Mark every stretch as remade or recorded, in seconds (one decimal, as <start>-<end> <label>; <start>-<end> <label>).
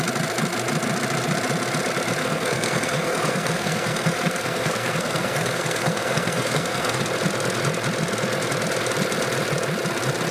0.0-2.2 recorded; 2.2-7.0 remade; 7.0-10.3 recorded